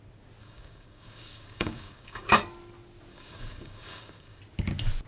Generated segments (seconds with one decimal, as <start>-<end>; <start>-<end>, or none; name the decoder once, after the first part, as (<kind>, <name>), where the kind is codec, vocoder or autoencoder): 0.4-2.4 (codec, DAC); 3.1-4.4